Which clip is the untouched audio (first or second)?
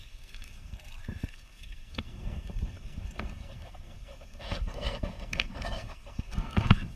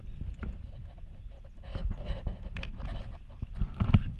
second